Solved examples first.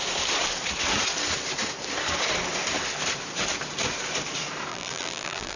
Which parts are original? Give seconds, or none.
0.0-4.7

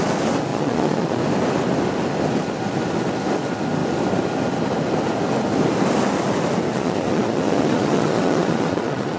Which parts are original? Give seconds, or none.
0.0-0.5; 1.2-6.7